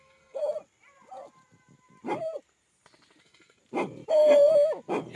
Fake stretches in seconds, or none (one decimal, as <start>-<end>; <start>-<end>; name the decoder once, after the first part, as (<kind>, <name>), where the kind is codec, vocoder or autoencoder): 0.0-0.4 (codec, SNAC); 3.2-3.6; 4.1-4.5